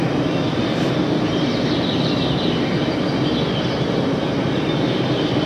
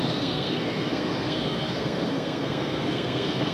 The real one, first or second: first